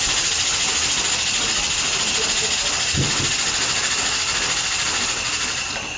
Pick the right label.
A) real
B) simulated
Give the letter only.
A